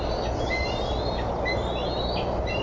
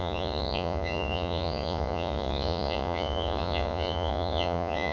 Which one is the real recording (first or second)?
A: first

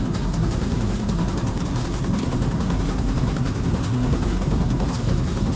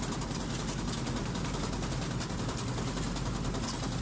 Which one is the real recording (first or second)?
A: second